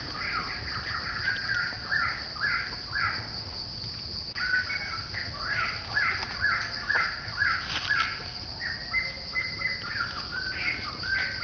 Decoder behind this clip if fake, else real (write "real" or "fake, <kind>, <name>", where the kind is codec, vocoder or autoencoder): real